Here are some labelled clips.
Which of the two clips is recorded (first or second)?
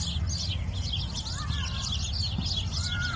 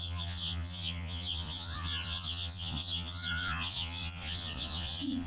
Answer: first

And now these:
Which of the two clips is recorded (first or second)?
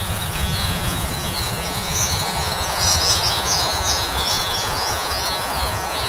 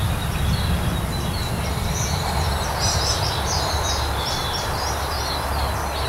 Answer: second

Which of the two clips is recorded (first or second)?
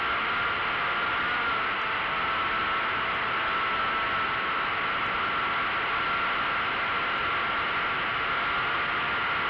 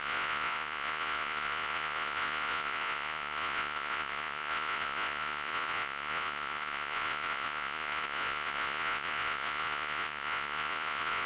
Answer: first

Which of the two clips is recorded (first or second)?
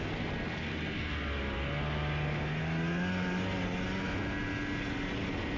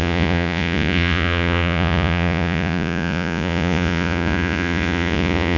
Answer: first